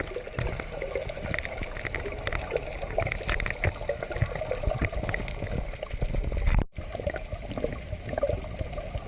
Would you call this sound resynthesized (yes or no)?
no